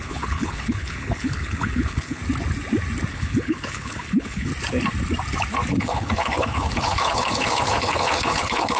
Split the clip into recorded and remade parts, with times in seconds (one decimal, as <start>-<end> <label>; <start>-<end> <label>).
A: 0.0-2.2 remade; 2.2-3.1 recorded; 3.1-4.5 remade; 4.5-5.8 recorded; 5.8-8.8 remade